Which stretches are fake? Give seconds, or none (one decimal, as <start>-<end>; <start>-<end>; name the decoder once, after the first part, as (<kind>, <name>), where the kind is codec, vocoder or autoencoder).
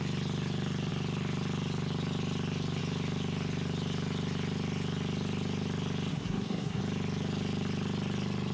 6.1-6.8 (codec, SNAC)